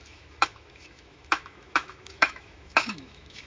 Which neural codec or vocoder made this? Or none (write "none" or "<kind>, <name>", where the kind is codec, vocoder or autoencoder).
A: autoencoder, DAC-VAE